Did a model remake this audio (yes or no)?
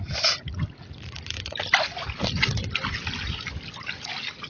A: no